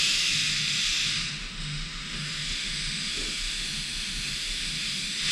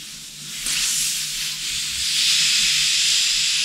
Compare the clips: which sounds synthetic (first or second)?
first